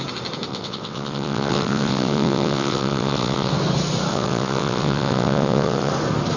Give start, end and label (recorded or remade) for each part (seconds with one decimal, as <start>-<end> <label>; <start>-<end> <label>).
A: 0.0-0.5 recorded; 0.5-3.5 remade; 3.5-4.1 recorded; 4.1-5.9 remade; 5.9-6.4 recorded